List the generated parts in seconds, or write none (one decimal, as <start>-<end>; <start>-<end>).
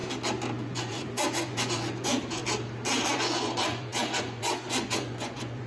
0.6-2.4; 3.1-5.7